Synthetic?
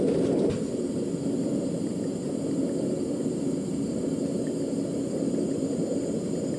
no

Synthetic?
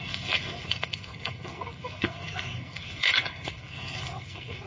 yes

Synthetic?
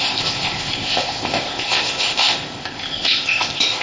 yes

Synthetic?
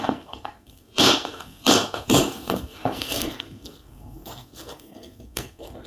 yes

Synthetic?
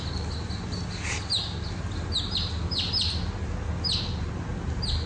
no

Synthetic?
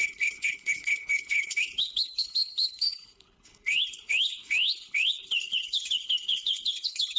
yes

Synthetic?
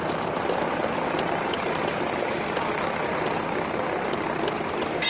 no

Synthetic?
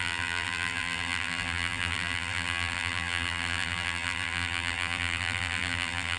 yes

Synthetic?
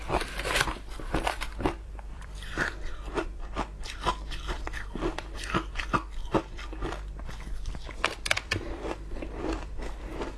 yes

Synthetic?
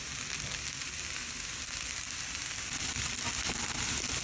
no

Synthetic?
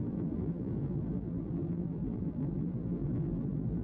yes